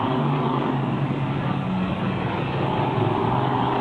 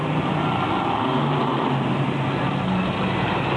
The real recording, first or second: second